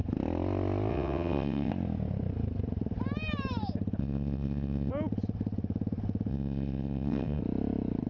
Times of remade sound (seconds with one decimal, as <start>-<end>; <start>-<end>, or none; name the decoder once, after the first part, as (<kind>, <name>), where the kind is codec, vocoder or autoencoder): 0.9-1.7 (vocoder, WaveNeXt); 4.0-4.9; 6.3-7.4